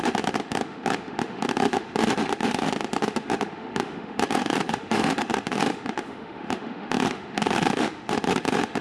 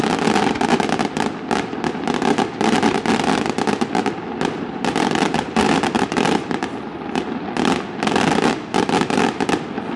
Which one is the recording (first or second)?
second